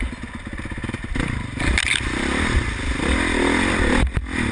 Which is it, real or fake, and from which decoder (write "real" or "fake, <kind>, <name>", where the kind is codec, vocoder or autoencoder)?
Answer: real